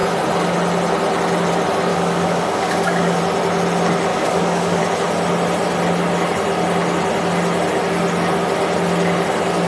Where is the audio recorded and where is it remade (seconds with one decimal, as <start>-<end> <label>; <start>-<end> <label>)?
0.0-1.9 recorded; 1.9-3.2 remade; 3.2-4.1 recorded; 4.1-4.8 remade; 4.8-9.7 recorded